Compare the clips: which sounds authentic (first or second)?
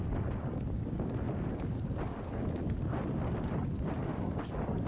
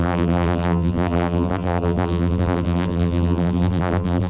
first